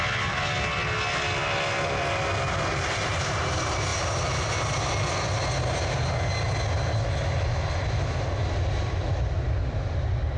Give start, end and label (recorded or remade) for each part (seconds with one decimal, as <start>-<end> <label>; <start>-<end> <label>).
0.0-10.4 recorded